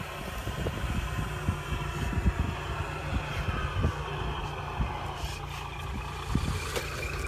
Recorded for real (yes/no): yes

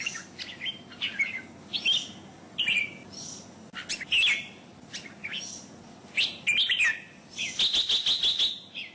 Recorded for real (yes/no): yes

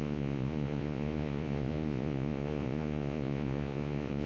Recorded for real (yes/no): no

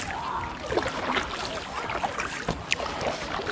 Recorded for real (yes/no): yes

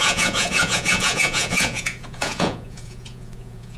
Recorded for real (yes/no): no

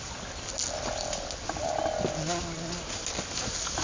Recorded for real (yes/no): yes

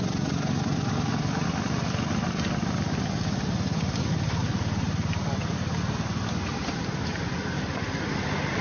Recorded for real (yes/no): yes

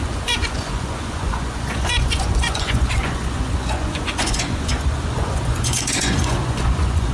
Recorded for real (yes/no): no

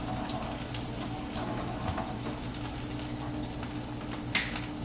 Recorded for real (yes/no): yes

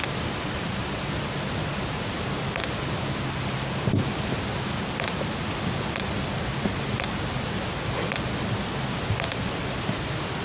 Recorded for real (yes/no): yes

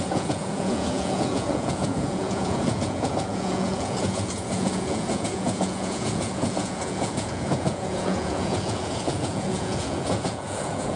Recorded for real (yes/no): no